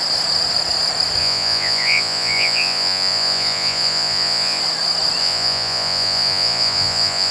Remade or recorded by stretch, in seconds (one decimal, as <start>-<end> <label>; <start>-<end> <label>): 0.0-1.2 recorded; 1.2-4.6 remade; 4.6-5.2 recorded; 5.2-7.3 remade